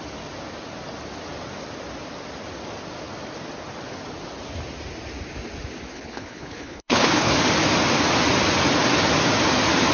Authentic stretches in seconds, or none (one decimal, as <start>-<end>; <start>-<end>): 0.0-5.9; 7.3-9.9